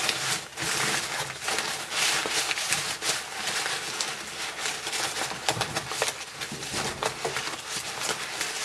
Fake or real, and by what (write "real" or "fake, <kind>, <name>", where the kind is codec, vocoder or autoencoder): real